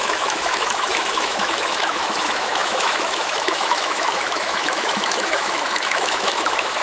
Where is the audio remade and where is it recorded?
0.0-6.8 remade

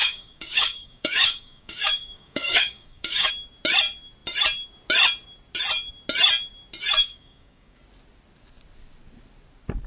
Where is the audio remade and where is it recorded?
0.0-3.3 remade; 3.3-7.0 recorded; 7.0-7.8 remade; 7.8-9.9 recorded

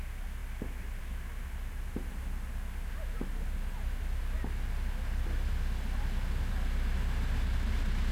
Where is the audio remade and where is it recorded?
0.0-8.1 recorded

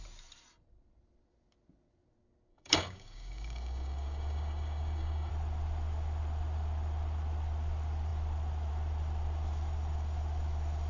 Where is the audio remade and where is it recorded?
0.0-2.5 recorded; 2.5-5.3 remade; 5.3-10.9 recorded

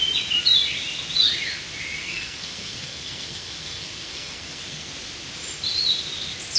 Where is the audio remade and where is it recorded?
0.0-2.0 recorded; 2.0-4.9 remade; 4.9-6.6 recorded

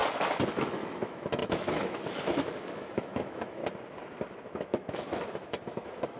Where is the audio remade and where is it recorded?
0.0-0.5 recorded; 0.5-3.6 remade; 3.6-4.3 recorded; 4.3-6.2 remade

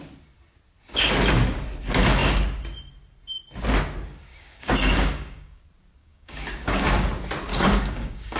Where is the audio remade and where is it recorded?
0.0-4.3 recorded; 4.3-5.6 remade; 5.6-6.0 recorded; 6.0-7.1 remade; 7.1-7.5 recorded; 7.5-8.4 remade